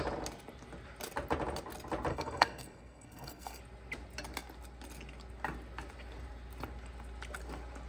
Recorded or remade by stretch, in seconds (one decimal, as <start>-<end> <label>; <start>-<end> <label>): 0.0-2.1 recorded; 2.1-3.6 remade; 3.6-7.9 recorded